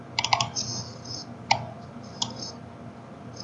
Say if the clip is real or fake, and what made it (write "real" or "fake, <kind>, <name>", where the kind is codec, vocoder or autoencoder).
real